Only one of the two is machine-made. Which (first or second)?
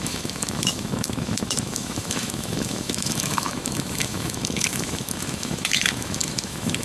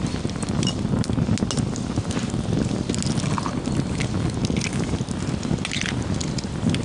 first